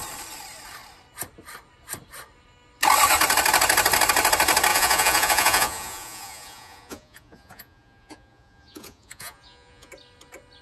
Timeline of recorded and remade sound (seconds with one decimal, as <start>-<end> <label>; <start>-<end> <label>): 0.0-4.7 recorded; 4.7-9.9 remade; 9.9-10.6 recorded